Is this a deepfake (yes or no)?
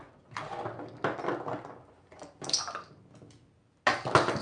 no